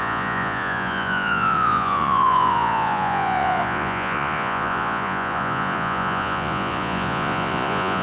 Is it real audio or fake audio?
fake